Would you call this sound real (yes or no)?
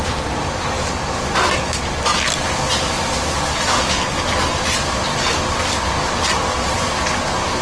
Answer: yes